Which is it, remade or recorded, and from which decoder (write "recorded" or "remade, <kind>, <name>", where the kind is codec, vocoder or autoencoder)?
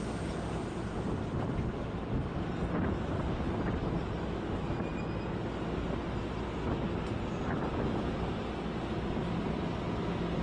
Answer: recorded